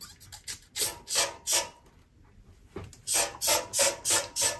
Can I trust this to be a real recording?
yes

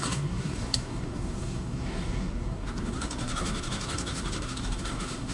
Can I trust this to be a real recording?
no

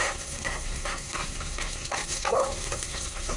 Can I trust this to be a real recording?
no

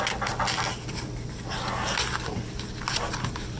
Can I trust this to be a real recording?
yes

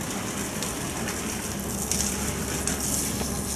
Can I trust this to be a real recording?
yes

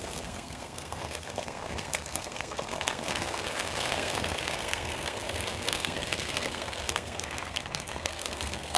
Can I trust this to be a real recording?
no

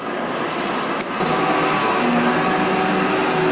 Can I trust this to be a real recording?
yes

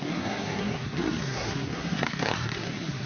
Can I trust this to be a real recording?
no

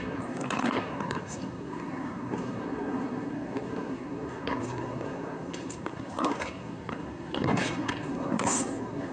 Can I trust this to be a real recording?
no